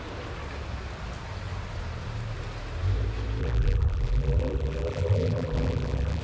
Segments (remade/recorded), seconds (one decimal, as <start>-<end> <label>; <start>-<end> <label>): 0.0-3.4 recorded; 3.4-6.2 remade